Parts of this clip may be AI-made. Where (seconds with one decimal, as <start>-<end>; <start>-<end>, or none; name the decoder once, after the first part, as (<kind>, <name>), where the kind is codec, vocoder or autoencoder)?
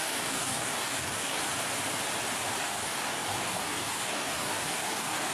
0.0-1.4 (codec, DAC); 2.6-5.3